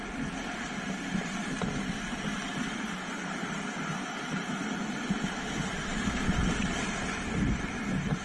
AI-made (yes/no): no